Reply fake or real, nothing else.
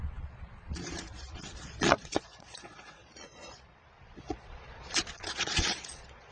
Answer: fake